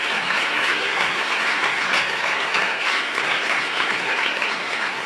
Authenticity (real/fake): fake